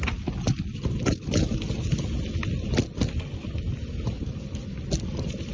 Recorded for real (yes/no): yes